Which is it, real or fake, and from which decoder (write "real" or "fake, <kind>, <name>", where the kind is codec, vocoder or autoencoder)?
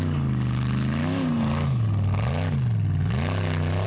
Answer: real